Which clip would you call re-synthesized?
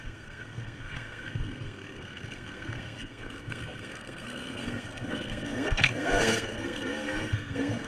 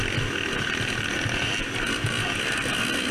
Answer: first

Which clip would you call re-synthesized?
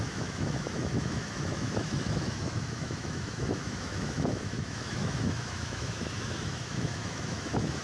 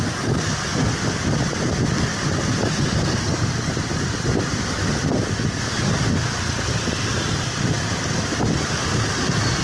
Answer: first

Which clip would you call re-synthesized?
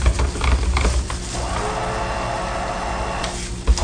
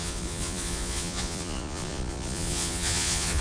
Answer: second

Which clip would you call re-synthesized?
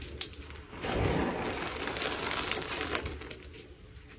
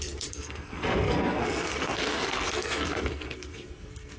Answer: second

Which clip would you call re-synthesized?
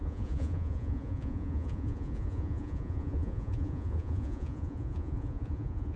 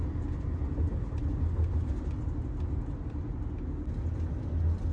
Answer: first